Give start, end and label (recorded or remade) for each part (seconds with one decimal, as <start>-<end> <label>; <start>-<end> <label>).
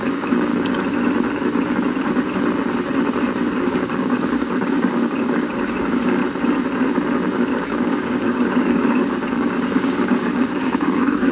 0.0-0.5 remade; 0.5-3.5 recorded; 3.5-6.2 remade; 6.2-7.2 recorded; 7.2-11.3 remade